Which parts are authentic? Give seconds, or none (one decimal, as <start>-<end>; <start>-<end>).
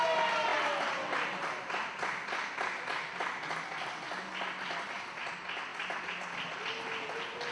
0.0-7.5